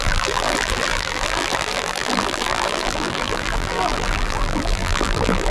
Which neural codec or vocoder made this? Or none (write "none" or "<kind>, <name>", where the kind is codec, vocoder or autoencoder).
vocoder, BigVGAN v2